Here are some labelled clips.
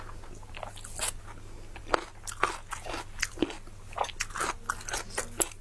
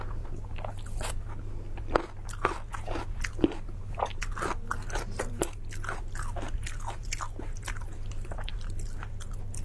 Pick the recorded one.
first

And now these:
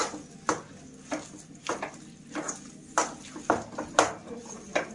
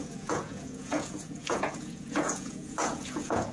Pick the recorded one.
first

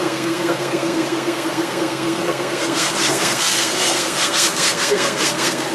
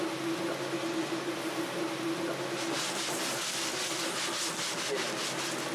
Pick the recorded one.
second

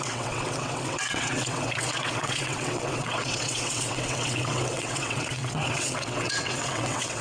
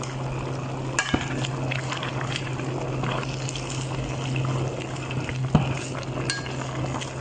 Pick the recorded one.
second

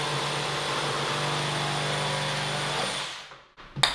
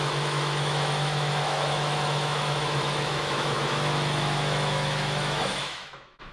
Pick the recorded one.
first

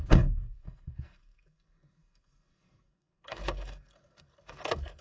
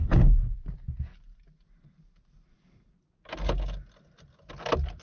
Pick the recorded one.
second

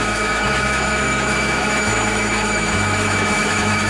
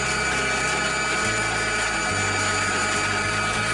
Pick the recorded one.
second